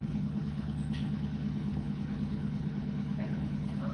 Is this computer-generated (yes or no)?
yes